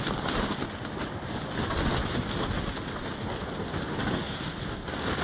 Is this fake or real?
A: real